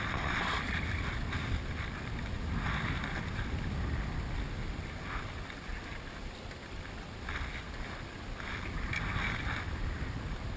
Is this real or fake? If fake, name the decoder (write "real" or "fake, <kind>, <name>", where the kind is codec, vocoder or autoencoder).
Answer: real